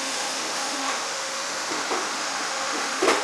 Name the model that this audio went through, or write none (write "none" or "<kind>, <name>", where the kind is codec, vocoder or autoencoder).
autoencoder, DAC-VAE